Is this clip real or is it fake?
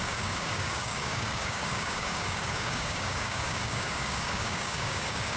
fake